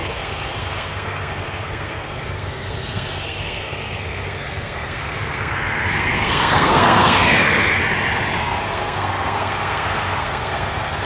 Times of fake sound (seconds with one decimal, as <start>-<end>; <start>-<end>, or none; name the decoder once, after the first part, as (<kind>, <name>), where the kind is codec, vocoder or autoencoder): 0.0-7.8 (codec, SNAC); 8.4-11.1